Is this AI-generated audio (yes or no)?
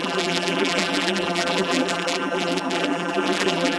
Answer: yes